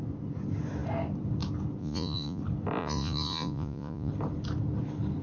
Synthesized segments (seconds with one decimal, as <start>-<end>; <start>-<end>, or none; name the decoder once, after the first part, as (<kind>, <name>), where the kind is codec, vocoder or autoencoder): 1.8-2.4 (vocoder, Vocos); 2.8-4.1